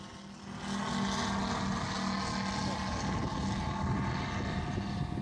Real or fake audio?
real